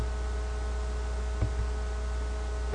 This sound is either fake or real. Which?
real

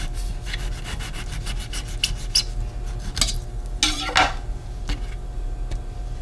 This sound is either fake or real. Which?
real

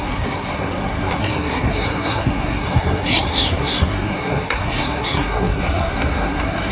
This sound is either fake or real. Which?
fake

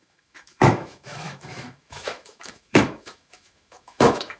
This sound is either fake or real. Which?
fake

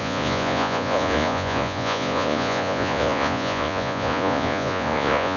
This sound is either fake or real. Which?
fake